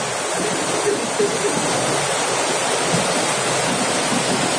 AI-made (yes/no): no